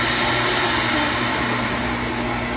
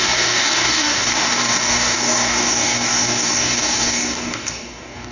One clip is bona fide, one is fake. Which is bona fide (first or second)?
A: first